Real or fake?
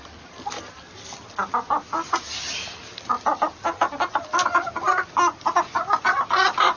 real